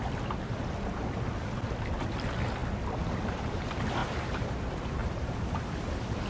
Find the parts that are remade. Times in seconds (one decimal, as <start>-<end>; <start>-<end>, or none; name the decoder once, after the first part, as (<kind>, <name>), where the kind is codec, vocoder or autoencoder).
4.0-4.6 (vocoder, BigVGAN v2); 5.0-5.6